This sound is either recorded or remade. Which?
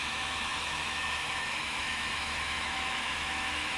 remade